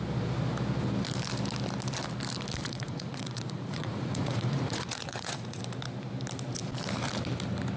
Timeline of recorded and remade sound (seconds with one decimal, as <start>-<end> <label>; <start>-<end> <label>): 0.0-2.6 recorded; 2.6-5.6 remade; 5.6-7.8 recorded